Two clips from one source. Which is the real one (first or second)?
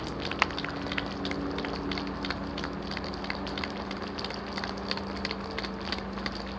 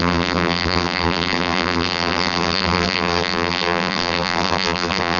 first